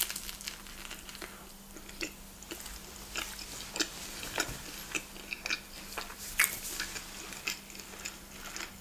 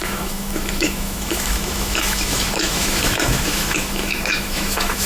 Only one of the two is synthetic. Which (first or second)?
second